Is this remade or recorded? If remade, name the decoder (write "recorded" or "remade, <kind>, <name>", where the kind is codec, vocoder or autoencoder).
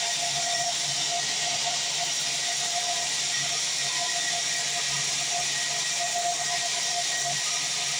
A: recorded